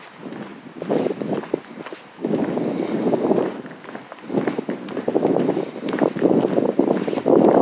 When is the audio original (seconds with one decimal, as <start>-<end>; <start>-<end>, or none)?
0.0-7.6